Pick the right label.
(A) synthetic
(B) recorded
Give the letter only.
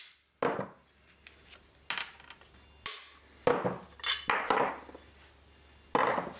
B